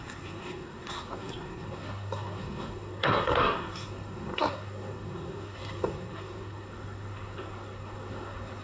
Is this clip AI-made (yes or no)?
yes